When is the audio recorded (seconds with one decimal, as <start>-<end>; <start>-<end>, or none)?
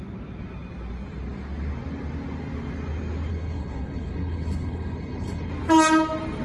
0.0-3.3; 5.5-6.4